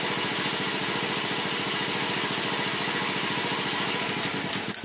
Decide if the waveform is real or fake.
real